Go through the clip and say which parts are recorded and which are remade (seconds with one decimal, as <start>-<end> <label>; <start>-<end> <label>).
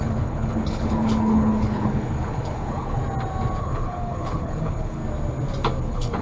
0.0-3.0 remade; 3.0-3.6 recorded; 3.6-5.0 remade; 5.0-5.8 recorded; 5.8-6.2 remade